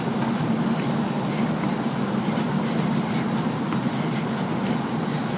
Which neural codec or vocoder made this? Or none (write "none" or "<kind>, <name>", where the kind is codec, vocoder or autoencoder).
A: none